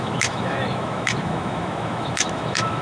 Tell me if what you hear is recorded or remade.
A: remade